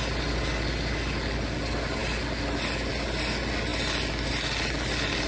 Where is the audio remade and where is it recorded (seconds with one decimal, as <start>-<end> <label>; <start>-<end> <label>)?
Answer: 0.0-5.3 recorded